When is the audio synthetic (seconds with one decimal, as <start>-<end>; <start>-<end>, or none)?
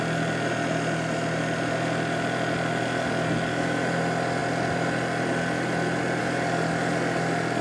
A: none